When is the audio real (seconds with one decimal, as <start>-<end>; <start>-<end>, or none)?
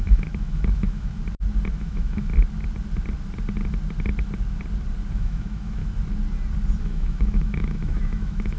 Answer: 1.2-1.7; 2.3-5.1; 5.8-6.8